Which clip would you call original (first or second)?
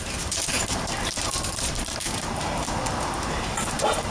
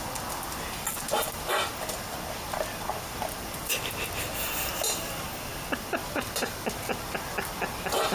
second